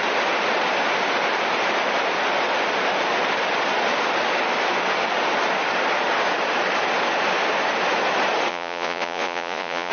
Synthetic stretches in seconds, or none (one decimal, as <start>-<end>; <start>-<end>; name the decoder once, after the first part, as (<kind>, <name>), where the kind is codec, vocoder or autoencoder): 8.5-9.9 (vocoder, Vocos)